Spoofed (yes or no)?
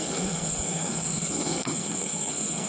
yes